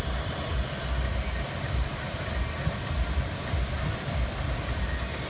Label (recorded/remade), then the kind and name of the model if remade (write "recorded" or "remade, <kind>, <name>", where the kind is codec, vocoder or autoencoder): recorded